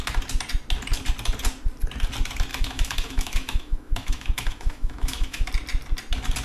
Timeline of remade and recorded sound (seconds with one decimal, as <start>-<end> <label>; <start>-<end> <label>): 0.0-2.5 recorded; 2.5-5.5 remade; 5.5-6.4 recorded